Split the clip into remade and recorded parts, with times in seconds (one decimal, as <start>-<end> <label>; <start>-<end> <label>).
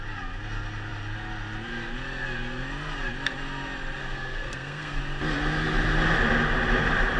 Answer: 0.0-4.0 recorded; 4.0-5.0 remade; 5.0-7.2 recorded